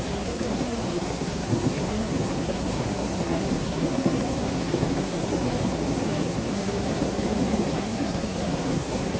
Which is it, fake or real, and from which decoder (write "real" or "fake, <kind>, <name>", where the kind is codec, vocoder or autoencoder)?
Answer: fake, codec, SNAC